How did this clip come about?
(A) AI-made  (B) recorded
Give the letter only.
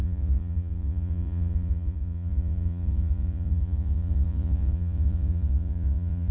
A